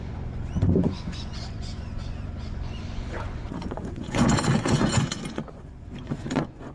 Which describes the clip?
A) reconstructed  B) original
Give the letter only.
A